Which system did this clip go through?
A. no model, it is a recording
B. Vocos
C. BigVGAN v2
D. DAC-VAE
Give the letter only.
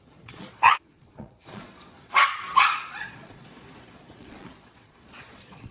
B